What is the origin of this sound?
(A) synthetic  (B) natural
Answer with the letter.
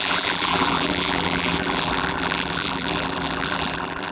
A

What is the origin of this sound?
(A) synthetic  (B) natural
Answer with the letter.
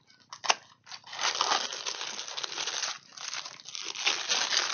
B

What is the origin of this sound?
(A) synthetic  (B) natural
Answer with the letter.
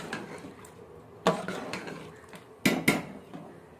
B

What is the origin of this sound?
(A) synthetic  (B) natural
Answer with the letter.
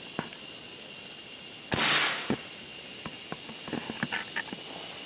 B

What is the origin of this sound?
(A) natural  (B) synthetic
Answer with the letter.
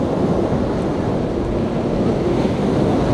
A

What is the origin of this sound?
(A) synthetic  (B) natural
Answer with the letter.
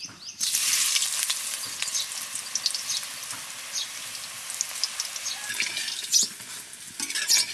B